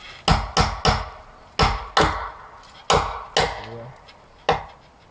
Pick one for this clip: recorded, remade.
recorded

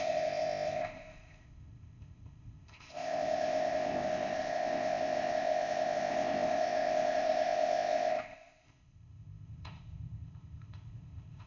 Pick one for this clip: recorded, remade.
remade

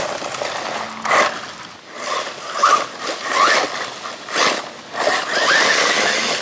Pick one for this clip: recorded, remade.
recorded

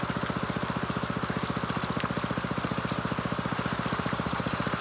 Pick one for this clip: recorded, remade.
recorded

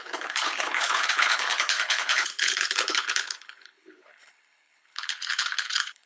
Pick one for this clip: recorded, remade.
remade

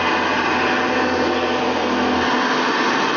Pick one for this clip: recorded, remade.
recorded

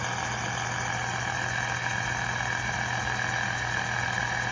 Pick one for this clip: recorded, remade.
recorded